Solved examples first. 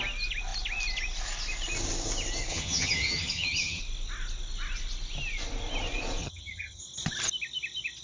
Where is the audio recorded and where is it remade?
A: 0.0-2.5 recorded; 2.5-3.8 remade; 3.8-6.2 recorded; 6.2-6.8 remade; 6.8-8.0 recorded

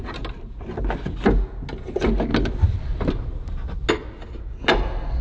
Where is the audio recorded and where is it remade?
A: 0.0-5.2 recorded

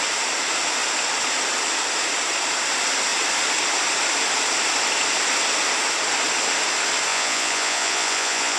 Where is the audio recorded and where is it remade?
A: 0.0-7.1 recorded; 7.1-8.6 remade

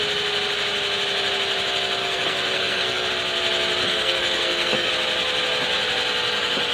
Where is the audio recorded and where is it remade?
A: 0.0-2.0 recorded; 2.0-3.1 remade; 3.1-3.8 recorded; 3.8-4.9 remade; 4.9-6.7 recorded

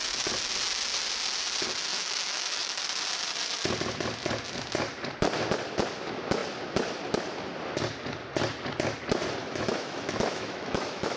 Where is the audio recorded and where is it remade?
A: 0.0-1.9 recorded; 1.9-2.8 remade; 2.8-9.4 recorded; 9.4-11.2 remade

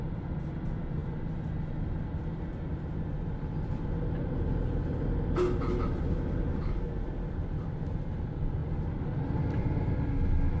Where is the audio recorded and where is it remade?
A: 0.0-10.6 recorded

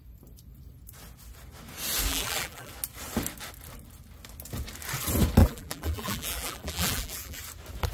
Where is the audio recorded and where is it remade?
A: 0.0-2.1 recorded; 2.1-2.7 remade; 2.7-5.4 recorded; 5.4-7.4 remade; 7.4-7.9 recorded

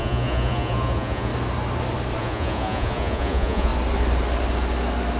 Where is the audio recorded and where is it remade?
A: 0.0-1.3 remade; 1.3-2.2 recorded; 2.2-3.7 remade; 3.7-5.2 recorded